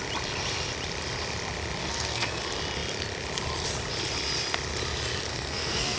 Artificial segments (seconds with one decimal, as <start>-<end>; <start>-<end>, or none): 1.8-2.4; 5.3-6.0